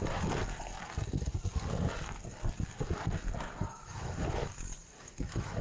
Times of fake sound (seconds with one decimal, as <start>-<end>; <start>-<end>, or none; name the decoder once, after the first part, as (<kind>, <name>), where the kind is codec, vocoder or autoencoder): 3.4-4.4 (autoencoder, DAC-VAE); 5.0-5.6

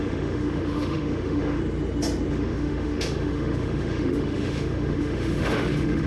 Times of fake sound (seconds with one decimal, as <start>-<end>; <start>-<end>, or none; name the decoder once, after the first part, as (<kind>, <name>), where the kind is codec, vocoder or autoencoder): 0.0-1.6 (autoencoder, DAC-VAE); 2.3-6.1

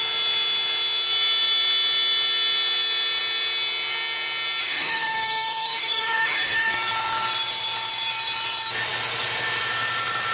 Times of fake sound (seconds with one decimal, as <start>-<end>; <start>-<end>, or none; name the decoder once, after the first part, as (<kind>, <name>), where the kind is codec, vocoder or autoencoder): 4.6-6.7 (autoencoder, DAC-VAE)

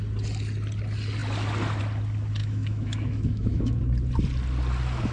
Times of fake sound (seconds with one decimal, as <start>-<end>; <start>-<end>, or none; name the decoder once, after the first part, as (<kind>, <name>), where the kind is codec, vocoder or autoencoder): 2.4-3.8 (autoencoder, DAC-VAE)

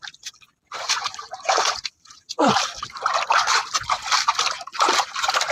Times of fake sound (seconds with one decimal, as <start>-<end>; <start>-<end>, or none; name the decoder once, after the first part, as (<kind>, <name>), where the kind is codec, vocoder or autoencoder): none

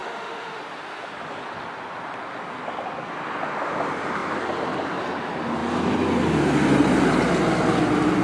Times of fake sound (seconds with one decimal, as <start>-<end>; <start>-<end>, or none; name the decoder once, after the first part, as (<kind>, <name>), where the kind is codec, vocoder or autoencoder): 0.0-0.6 (autoencoder, DAC-VAE)

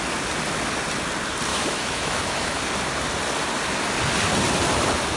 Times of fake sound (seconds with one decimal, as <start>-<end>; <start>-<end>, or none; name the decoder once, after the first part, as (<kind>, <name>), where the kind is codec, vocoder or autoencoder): 1.5-2.6 (autoencoder, DAC-VAE)